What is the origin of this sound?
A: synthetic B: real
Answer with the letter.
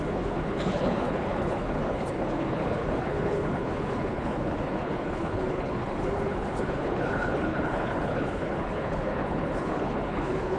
A